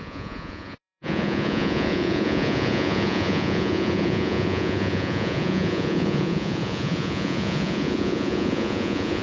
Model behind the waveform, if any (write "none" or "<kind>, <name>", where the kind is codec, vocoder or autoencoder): vocoder, Vocos